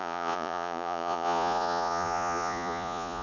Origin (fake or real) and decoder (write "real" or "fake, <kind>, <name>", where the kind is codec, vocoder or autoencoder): fake, vocoder, Vocos